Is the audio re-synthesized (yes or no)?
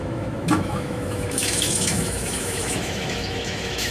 yes